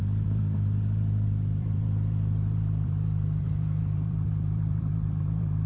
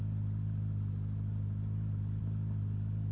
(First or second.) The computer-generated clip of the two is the first